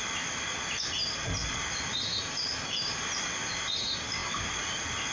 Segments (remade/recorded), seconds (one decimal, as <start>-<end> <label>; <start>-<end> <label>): 0.0-5.1 recorded